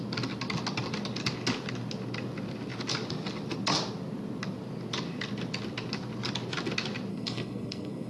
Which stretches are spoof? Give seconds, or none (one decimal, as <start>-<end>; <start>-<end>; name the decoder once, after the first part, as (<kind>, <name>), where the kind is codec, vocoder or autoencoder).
7.1-8.1 (codec, SNAC)